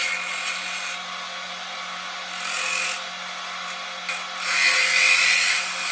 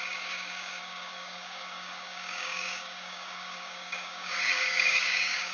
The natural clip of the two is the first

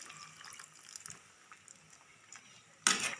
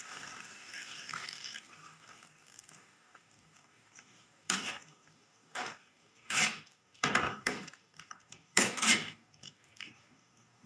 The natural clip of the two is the first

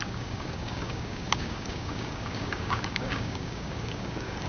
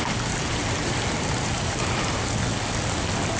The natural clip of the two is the second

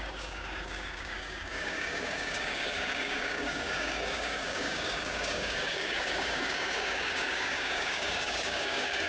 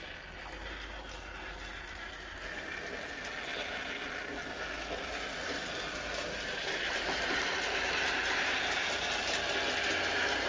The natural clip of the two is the second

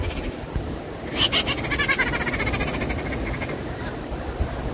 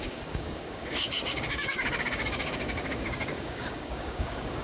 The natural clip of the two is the first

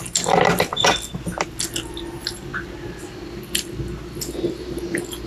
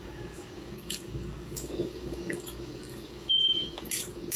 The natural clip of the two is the first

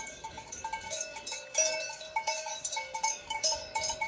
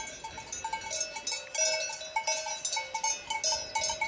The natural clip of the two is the second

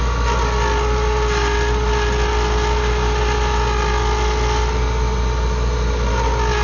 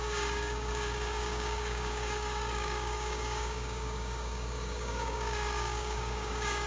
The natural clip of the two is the first